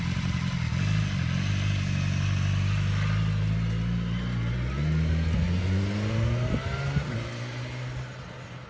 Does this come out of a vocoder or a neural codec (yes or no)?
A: no